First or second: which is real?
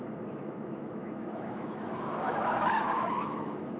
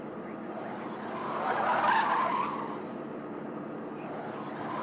second